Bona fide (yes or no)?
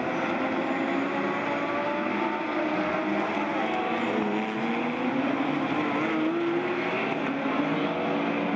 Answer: yes